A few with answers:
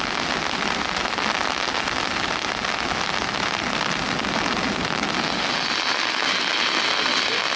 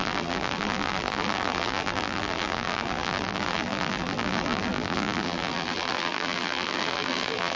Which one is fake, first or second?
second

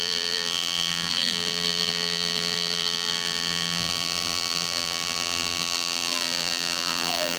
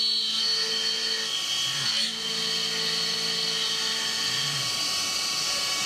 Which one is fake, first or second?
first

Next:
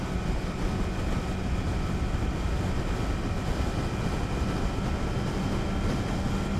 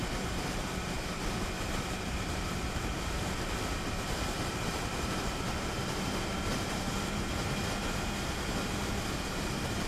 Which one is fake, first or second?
second